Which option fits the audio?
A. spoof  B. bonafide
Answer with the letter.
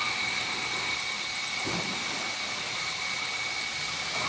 B